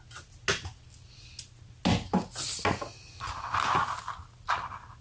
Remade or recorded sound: recorded